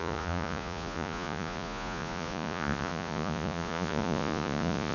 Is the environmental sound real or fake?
fake